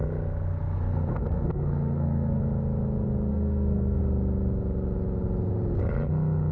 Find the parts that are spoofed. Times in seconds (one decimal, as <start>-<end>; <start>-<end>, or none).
1.1-2.4; 3.3-4.0